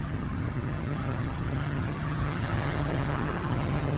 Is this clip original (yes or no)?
no